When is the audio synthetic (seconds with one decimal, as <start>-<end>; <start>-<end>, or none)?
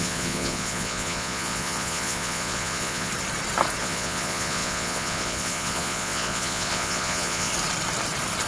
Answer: 0.0-3.1; 3.8-7.5